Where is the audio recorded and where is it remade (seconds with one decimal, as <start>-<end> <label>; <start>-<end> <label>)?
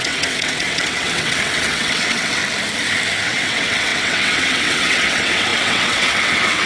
0.0-2.4 remade; 2.4-3.2 recorded; 3.2-6.7 remade